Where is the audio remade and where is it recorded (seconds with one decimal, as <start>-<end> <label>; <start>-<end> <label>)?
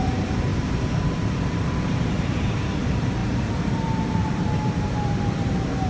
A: 0.0-5.9 remade